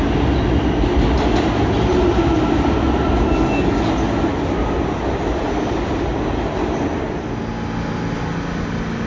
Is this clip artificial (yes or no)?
no